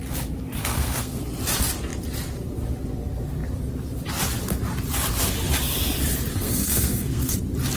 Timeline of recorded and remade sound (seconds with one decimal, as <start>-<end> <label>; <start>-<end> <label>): 0.0-0.6 recorded; 0.6-1.2 remade; 1.2-6.3 recorded; 6.3-7.3 remade; 7.3-7.8 recorded